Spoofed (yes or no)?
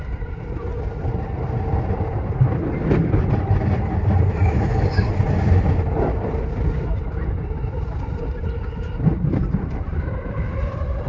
yes